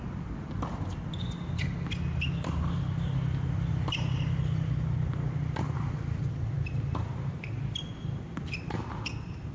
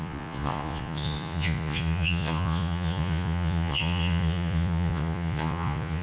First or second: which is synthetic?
second